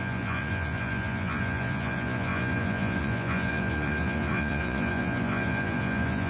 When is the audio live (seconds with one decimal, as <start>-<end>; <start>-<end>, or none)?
none

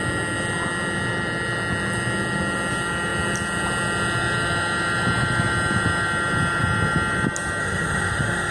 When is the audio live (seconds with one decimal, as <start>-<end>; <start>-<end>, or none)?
0.0-7.6